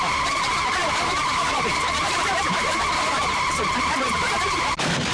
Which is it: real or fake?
fake